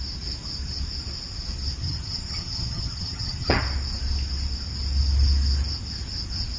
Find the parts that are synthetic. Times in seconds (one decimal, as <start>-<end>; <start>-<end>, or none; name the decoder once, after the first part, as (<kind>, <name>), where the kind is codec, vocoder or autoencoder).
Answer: 1.8-3.6 (vocoder, HiFi-GAN)